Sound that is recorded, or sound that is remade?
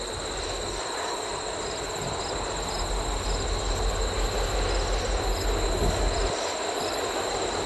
recorded